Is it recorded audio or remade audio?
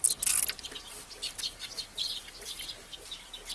recorded